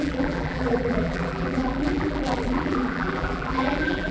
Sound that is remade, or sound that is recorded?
remade